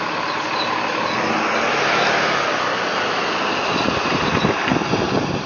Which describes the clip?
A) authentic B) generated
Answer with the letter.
A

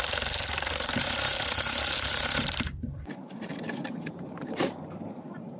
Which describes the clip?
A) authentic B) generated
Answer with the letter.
B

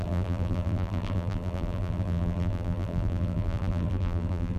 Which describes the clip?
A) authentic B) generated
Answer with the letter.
B